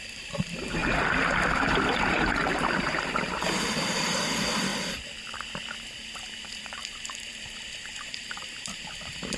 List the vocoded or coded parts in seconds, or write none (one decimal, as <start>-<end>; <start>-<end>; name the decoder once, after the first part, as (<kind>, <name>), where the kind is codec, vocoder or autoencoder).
0.0-0.8 (vocoder, BigVGAN v2); 1.9-4.7; 5.5-9.4

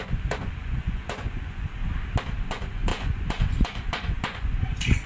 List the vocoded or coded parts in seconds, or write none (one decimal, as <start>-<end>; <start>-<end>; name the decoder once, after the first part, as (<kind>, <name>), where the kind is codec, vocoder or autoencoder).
0.0-1.8 (vocoder, Vocos); 2.4-5.1